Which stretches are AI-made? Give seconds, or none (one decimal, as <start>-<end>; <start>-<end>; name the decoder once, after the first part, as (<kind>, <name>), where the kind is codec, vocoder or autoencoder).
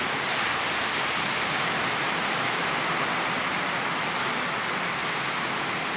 none